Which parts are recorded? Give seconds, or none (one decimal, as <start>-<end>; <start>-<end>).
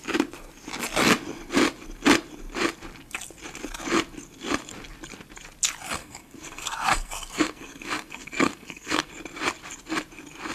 0.0-6.0; 9.1-10.5